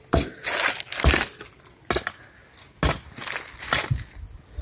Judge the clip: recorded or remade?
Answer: recorded